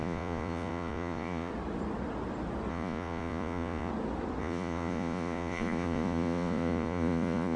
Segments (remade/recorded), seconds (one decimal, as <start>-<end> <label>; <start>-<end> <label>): 0.0-1.5 remade; 1.5-2.7 recorded; 2.7-3.9 remade; 3.9-4.4 recorded; 4.4-7.6 remade